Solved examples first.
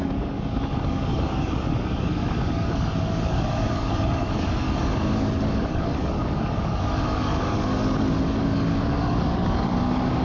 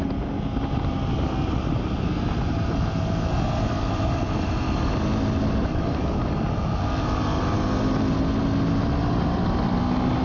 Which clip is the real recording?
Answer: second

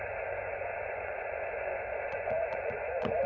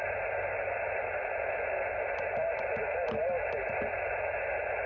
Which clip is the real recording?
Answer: second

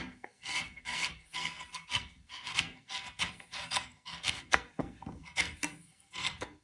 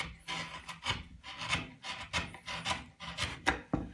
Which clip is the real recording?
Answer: second